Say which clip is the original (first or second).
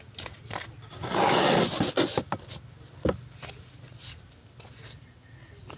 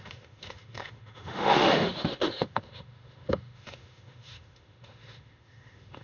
first